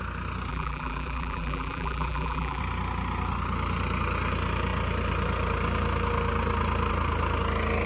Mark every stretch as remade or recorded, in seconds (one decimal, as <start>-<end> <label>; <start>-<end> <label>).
0.0-0.5 recorded; 0.5-2.6 remade; 2.6-7.9 recorded